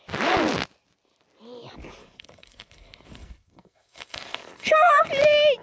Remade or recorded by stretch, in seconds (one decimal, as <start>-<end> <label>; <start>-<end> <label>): 0.0-2.0 recorded; 2.0-5.1 remade; 5.1-5.6 recorded